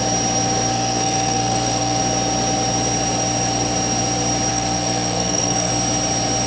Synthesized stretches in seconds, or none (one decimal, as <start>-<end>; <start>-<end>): 0.7-2.0; 4.5-5.7